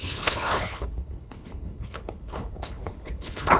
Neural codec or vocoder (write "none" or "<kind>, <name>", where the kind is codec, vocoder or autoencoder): codec, HILCodec